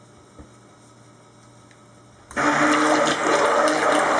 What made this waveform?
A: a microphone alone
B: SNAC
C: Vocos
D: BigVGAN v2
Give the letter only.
A